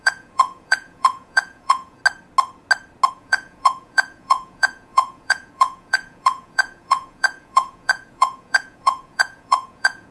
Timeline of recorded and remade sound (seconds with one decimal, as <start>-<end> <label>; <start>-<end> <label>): 0.0-2.0 remade; 2.0-3.1 recorded; 3.1-10.1 remade